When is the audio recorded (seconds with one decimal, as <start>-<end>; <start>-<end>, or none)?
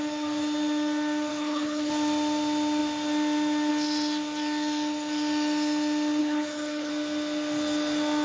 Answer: 0.0-1.3; 1.9-6.2; 6.9-8.2